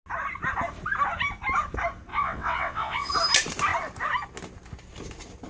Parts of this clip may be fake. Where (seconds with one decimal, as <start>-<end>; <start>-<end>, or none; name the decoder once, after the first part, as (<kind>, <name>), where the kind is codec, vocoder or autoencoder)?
2.1-3.1 (vocoder, WaveNeXt)